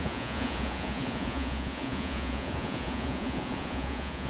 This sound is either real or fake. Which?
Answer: fake